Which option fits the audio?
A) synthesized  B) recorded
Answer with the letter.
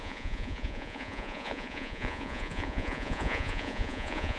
A